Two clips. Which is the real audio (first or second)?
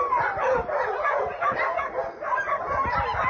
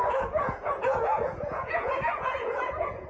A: first